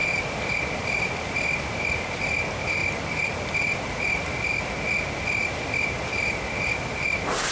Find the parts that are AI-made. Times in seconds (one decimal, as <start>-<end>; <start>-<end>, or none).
0.0-1.9; 2.8-4.5; 5.4-6.9